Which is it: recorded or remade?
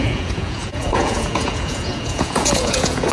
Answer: remade